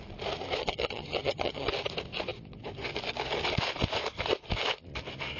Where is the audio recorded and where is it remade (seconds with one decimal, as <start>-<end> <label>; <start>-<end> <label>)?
0.0-0.6 recorded; 0.6-1.7 remade; 1.7-5.4 recorded

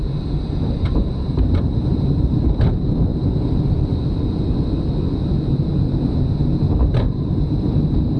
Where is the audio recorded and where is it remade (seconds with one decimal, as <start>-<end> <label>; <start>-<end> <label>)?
0.0-3.1 remade; 3.1-3.9 recorded; 3.9-5.7 remade; 5.7-6.8 recorded; 6.8-8.2 remade

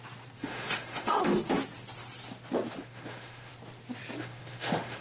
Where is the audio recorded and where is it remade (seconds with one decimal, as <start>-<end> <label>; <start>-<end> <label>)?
0.0-0.4 recorded; 0.4-1.2 remade; 1.2-2.8 recorded; 2.8-3.5 remade; 3.5-4.2 recorded; 4.2-5.0 remade

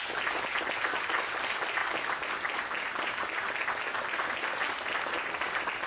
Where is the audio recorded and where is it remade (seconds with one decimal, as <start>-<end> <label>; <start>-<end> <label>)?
0.0-5.9 recorded

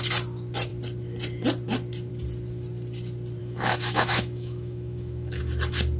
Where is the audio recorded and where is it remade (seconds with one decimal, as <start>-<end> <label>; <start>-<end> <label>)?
0.0-3.4 recorded; 3.4-5.4 remade; 5.4-6.0 recorded

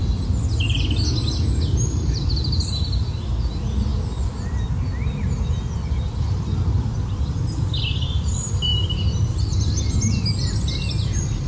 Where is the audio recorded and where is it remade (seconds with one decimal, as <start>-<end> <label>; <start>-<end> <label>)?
0.0-11.5 recorded

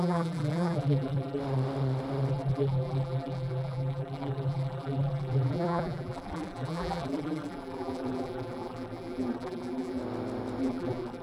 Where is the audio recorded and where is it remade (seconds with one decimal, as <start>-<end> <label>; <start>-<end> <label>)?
0.0-1.4 remade; 1.4-2.3 recorded; 2.3-10.0 remade; 10.0-10.6 recorded; 10.6-11.2 remade